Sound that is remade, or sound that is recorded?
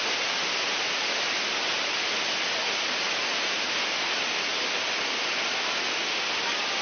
recorded